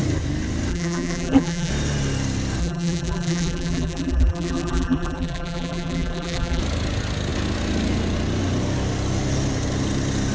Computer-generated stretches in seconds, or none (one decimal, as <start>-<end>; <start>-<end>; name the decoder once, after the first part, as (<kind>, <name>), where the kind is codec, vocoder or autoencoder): 0.7-1.7 (vocoder, BigVGAN v2); 2.6-6.6